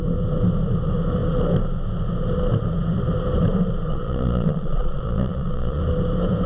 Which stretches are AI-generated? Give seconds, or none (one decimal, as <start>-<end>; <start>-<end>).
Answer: 3.9-5.8